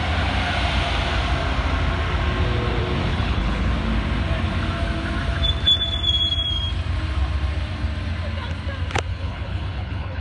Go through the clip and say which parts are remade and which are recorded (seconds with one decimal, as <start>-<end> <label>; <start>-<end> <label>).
0.0-3.1 recorded; 3.1-3.7 remade; 3.7-9.1 recorded; 9.1-10.2 remade